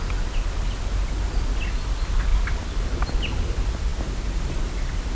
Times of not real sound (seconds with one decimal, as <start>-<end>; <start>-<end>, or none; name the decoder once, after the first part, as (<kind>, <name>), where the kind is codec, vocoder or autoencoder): none